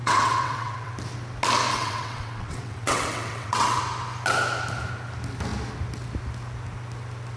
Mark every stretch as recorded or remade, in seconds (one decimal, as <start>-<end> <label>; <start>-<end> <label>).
0.0-0.9 remade; 0.9-1.7 recorded; 1.7-3.8 remade; 3.8-7.4 recorded